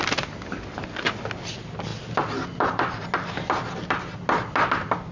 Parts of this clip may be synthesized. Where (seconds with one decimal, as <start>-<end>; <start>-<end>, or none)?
none